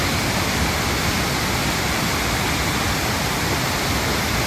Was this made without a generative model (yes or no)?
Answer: yes